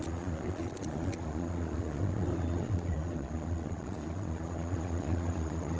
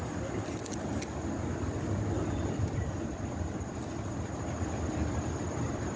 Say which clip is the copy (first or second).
first